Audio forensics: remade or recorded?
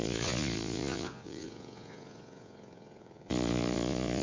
remade